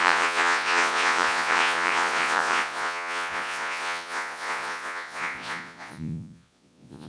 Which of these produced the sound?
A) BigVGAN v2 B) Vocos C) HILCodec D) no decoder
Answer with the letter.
B